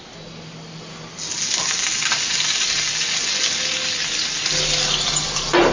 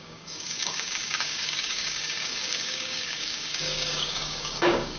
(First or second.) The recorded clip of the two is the first